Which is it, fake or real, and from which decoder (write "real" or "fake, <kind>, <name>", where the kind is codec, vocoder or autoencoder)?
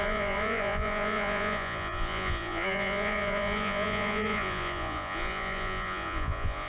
fake, vocoder, Vocos